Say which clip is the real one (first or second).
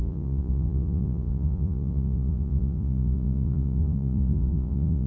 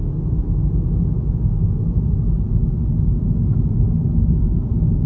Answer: second